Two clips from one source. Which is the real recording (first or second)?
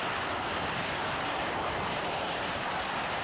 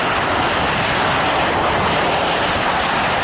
second